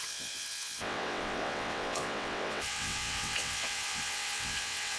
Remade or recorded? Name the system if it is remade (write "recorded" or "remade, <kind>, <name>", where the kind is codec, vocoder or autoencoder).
remade, vocoder, WaveNeXt